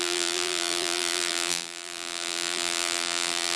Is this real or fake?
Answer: fake